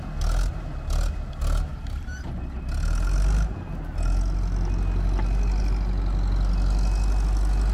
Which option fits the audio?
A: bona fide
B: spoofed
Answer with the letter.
A